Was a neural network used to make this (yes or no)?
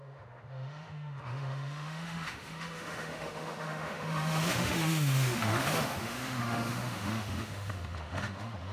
yes